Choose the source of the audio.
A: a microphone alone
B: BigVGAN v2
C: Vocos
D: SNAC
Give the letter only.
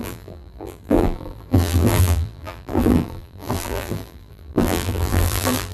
B